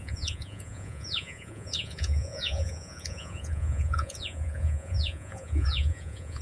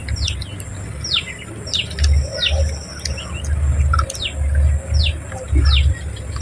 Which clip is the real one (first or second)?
second